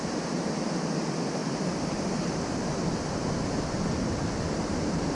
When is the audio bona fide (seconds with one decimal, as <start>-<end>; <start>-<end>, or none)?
0.0-5.1